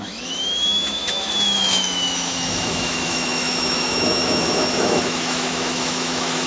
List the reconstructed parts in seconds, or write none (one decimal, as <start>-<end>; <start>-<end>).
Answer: 0.0-6.5

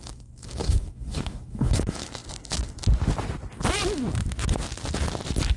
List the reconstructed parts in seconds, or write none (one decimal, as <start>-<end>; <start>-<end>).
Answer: 0.0-2.2

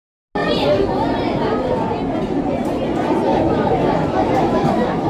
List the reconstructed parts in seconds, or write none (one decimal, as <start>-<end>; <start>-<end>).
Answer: 3.3-5.1

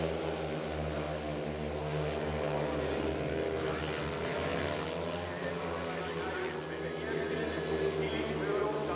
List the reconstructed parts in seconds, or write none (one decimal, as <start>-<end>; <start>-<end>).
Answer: none